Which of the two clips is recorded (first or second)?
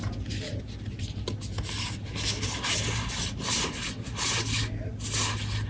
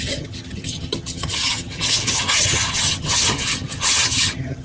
first